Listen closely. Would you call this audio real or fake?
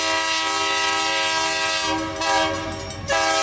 real